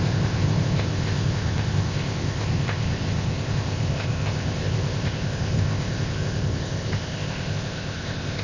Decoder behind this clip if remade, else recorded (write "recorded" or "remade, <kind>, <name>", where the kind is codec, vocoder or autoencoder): remade, codec, ZipCodec